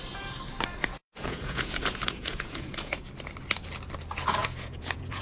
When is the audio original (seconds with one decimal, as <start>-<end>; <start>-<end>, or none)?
0.0-0.8; 3.1-4.4